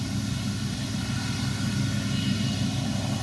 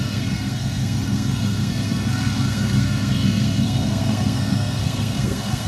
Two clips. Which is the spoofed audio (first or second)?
second